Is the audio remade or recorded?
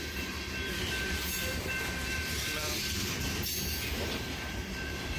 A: remade